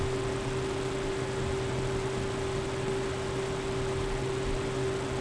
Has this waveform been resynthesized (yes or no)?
no